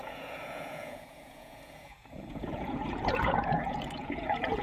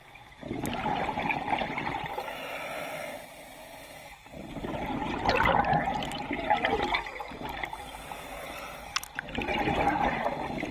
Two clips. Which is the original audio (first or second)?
second